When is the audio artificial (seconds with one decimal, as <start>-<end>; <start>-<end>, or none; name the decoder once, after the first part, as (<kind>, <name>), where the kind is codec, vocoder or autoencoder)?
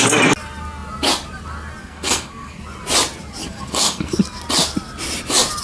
1.8-2.6 (codec, SNAC); 3.4-4.2